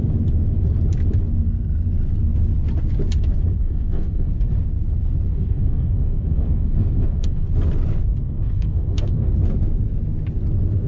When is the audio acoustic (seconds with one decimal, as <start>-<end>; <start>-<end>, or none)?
0.0-3.6; 4.3-5.3; 7.5-8.2; 9.3-10.9